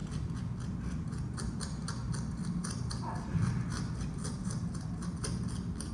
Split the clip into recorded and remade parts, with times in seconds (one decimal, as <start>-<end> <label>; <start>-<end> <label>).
0.0-5.9 recorded

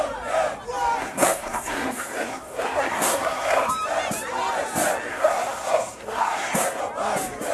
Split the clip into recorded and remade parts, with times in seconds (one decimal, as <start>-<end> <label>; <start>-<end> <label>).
0.0-1.0 recorded; 1.0-3.7 remade; 3.7-5.1 recorded; 5.1-6.8 remade; 6.8-7.5 recorded